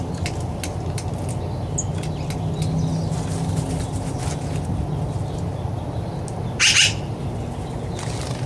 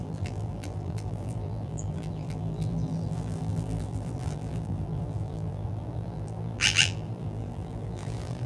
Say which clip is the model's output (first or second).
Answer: second